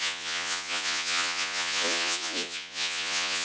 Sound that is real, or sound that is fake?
fake